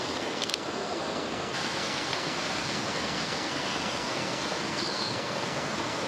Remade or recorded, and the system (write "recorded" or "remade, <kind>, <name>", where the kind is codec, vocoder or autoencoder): remade, codec, SNAC